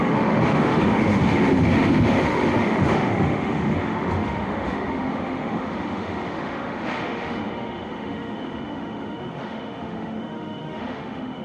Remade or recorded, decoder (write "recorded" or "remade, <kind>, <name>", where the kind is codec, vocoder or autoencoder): remade, autoencoder, DAC-VAE